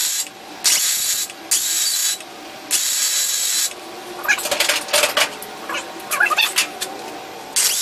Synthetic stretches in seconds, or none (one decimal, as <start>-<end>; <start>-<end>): none